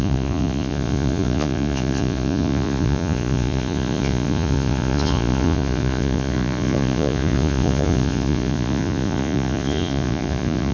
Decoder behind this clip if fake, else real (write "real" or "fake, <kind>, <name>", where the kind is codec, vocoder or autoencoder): fake, vocoder, Vocos